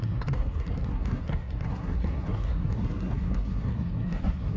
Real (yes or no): no